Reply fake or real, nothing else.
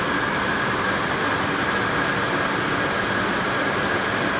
real